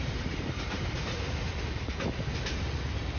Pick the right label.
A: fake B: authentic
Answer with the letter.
A